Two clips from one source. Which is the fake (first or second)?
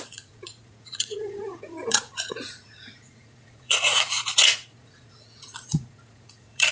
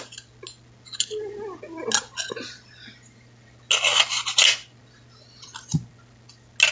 first